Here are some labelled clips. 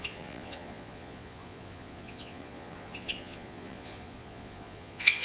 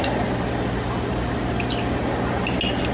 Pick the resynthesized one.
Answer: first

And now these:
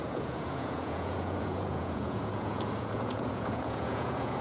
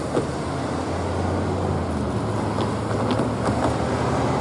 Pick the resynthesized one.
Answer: first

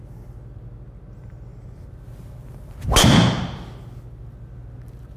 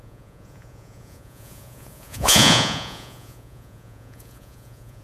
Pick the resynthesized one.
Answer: second